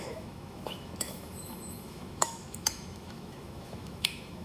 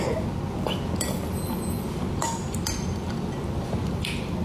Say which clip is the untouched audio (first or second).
second